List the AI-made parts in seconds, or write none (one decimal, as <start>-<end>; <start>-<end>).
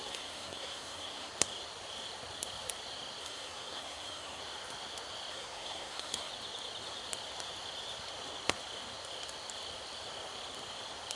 0.0-1.3; 3.2-4.4; 5.3-6.3